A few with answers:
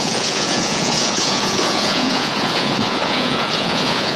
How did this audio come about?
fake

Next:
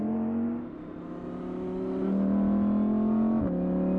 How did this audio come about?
real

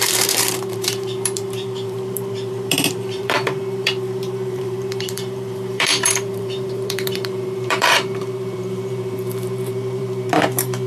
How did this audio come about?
fake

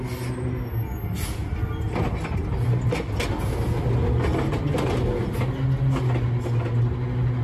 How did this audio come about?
real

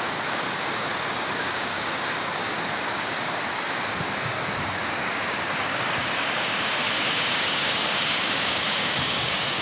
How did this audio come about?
fake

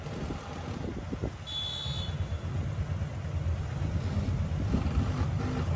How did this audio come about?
real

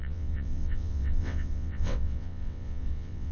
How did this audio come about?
fake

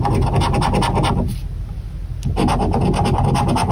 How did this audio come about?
real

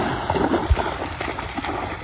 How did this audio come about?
real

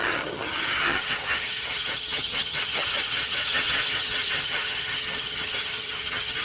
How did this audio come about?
fake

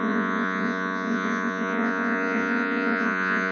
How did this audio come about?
fake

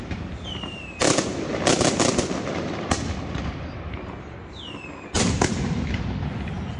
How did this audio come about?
real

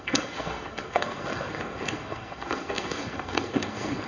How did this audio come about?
fake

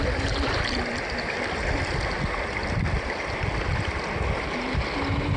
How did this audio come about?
fake